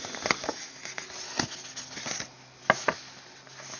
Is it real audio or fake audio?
real